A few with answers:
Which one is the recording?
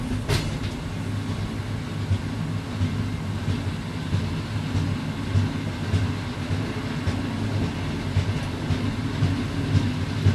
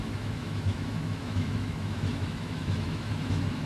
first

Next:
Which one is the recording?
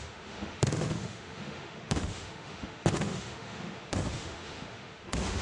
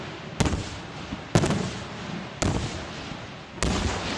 second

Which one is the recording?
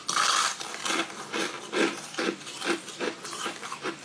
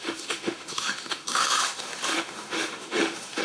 first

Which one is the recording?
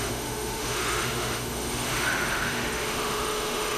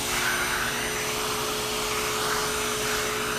second